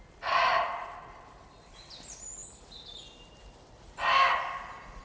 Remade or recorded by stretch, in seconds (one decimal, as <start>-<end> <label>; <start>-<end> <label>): 0.0-5.0 recorded